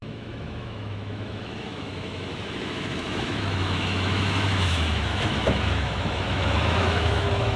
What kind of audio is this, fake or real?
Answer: fake